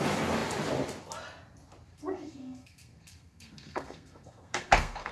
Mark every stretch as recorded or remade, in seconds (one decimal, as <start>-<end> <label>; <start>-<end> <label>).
0.0-1.9 recorded; 1.9-5.1 remade